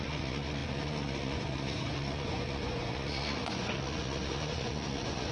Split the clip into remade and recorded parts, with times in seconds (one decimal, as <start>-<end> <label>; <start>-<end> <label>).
0.0-5.3 remade

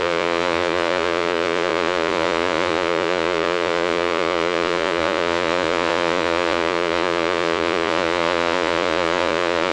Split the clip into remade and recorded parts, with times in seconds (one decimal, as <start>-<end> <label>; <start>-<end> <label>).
0.0-9.7 remade

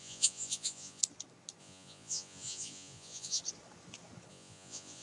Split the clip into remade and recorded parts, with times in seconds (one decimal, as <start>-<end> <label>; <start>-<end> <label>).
0.0-1.0 remade; 1.0-1.6 recorded; 1.6-3.4 remade; 3.4-4.3 recorded; 4.3-5.0 remade

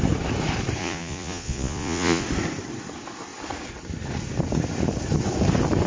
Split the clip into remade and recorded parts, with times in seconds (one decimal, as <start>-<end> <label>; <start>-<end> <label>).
0.0-0.8 recorded; 0.8-2.2 remade; 2.2-5.9 recorded

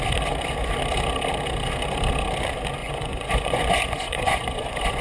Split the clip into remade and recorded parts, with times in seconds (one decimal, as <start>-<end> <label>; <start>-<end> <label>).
0.0-2.8 recorded; 2.8-5.0 remade